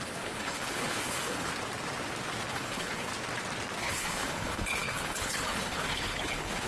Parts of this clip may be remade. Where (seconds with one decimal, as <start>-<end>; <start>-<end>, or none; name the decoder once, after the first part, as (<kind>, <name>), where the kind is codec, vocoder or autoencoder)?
0.0-1.5 (codec, HILCodec); 2.5-3.1; 3.8-6.7